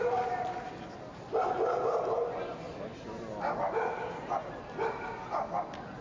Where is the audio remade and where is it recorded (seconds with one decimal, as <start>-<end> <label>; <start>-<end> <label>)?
0.0-6.0 recorded